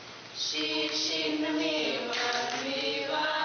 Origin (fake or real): real